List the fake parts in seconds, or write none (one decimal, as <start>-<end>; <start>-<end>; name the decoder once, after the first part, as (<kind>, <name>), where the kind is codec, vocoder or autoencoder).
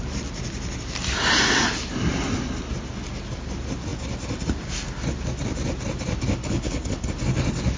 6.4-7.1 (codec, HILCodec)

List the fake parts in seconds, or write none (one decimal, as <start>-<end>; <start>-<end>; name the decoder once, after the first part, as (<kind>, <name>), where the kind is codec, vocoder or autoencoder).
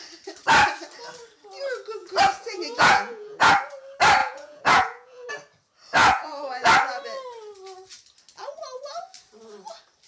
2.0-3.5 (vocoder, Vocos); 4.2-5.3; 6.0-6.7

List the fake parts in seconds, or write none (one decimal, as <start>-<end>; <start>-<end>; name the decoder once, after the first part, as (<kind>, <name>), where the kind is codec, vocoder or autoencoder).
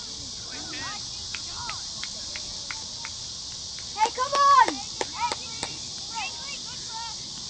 none